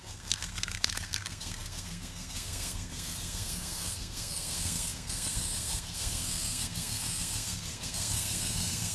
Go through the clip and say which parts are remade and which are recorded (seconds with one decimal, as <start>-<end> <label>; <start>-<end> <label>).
0.0-8.9 remade